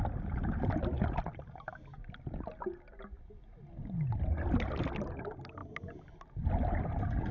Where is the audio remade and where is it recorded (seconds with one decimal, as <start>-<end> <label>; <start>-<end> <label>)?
0.0-7.3 recorded